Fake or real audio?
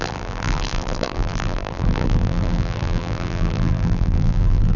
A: fake